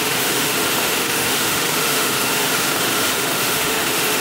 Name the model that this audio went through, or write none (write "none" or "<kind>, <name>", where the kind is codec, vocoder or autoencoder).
autoencoder, DAC-VAE